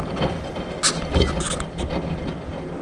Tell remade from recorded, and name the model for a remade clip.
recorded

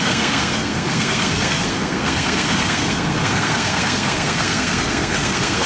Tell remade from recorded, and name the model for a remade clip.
remade, codec, SNAC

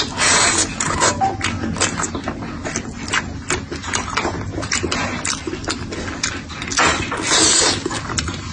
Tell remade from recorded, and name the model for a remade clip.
recorded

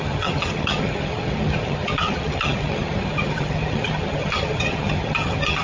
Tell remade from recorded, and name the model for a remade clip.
remade, vocoder, HiFi-GAN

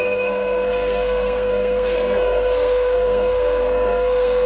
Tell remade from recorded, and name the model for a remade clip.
remade, codec, SNAC